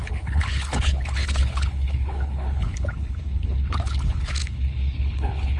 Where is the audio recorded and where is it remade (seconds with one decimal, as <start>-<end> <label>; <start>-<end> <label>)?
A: 0.0-5.6 remade